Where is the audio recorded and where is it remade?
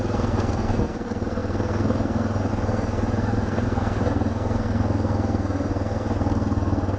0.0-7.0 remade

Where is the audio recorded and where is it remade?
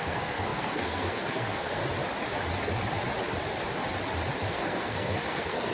0.0-1.8 remade; 1.8-4.5 recorded; 4.5-5.7 remade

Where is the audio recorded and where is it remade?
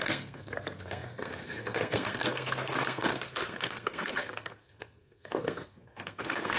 0.0-6.6 remade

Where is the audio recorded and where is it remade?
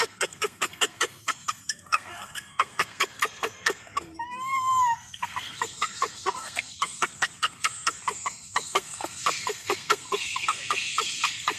0.0-11.6 remade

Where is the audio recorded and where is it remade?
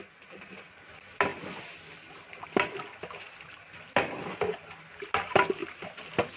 0.0-6.4 recorded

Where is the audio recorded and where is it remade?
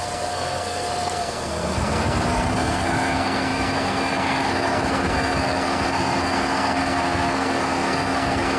0.0-8.6 remade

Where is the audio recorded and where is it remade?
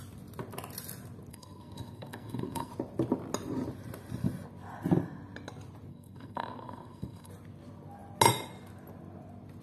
0.0-1.3 recorded; 1.3-2.7 remade; 2.7-5.9 recorded; 5.9-7.3 remade; 7.3-9.6 recorded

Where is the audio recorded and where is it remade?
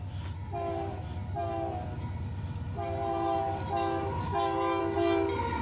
0.0-5.6 recorded